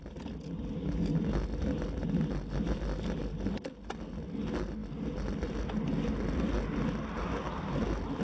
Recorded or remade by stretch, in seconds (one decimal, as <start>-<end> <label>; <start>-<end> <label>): 0.0-8.2 recorded